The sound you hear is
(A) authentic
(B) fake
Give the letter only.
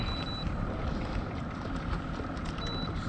A